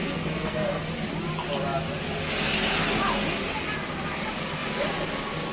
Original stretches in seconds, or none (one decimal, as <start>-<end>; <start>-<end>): 0.8-5.5